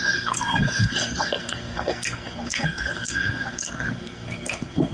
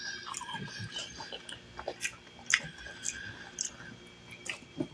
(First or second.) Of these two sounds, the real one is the second